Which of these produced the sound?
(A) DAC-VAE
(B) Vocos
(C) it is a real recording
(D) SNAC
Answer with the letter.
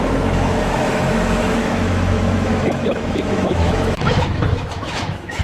A